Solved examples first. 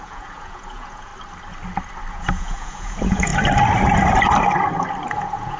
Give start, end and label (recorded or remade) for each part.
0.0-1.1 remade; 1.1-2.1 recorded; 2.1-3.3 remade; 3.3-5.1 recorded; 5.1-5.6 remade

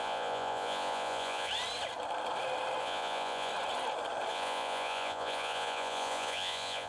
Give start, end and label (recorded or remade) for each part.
0.0-1.5 remade; 1.5-2.8 recorded; 2.8-3.5 remade; 3.5-4.3 recorded; 4.3-6.9 remade

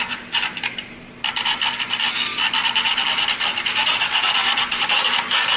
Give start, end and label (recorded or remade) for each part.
0.0-5.6 recorded